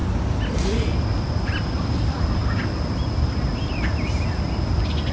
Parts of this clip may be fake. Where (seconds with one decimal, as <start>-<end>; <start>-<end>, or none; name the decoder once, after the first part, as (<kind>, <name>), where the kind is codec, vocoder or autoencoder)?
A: none